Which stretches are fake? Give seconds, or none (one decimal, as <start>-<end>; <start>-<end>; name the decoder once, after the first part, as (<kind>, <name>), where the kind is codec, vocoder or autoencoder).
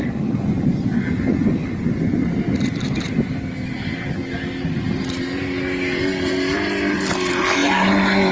none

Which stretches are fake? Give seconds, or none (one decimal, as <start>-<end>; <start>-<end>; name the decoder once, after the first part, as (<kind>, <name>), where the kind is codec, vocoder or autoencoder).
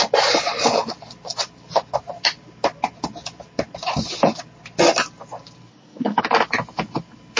5.7-6.2 (codec, SNAC)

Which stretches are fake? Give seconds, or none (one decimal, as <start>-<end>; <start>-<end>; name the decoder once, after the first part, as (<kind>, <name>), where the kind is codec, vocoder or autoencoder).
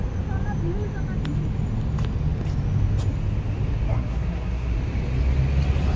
3.9-4.8 (codec, SNAC)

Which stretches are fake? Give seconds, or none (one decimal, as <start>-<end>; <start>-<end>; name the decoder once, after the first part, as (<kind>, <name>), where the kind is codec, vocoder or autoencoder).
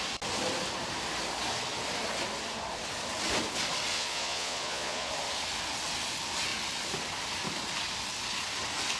3.9-5.1 (vocoder, Vocos)